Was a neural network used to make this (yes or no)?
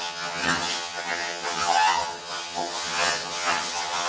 yes